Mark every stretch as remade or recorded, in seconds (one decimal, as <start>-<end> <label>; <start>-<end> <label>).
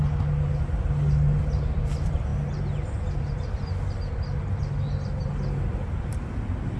0.0-6.8 recorded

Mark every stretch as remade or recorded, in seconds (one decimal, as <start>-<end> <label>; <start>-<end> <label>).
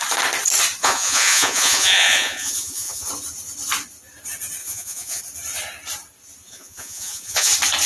0.0-0.8 recorded; 0.8-3.1 remade; 3.1-4.6 recorded; 4.6-5.2 remade; 5.2-6.4 recorded; 6.4-7.5 remade; 7.5-7.9 recorded